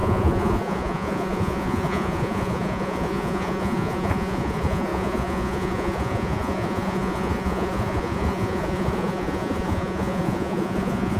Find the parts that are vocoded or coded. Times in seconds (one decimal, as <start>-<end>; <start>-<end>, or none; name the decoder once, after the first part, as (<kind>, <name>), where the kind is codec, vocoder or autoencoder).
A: 0.0-11.2 (vocoder, Vocos)